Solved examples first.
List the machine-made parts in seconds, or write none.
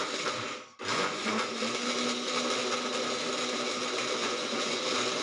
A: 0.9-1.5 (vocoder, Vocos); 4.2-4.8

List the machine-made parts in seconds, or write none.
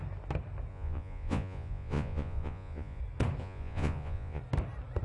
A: 0.7-3.0 (vocoder, Vocos); 3.4-4.4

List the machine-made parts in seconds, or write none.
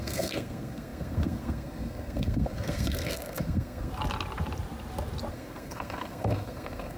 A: 0.0-3.9 (codec, SNAC); 5.3-7.0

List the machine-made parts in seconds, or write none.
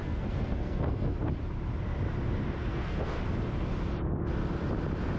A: 0.0-1.2 (codec, SNAC); 2.6-3.2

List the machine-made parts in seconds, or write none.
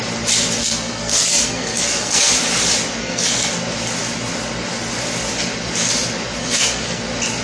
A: 0.6-2.3 (codec, SNAC); 3.0-3.5; 6.4-7.0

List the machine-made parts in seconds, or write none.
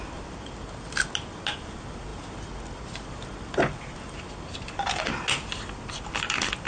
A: none